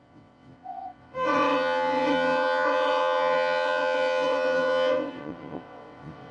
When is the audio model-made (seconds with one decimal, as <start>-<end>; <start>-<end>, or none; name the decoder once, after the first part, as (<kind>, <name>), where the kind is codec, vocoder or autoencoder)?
0.0-6.3 (vocoder, WaveNeXt)